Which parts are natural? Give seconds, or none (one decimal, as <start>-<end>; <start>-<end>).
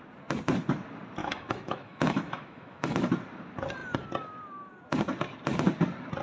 0.0-1.2; 3.1-6.2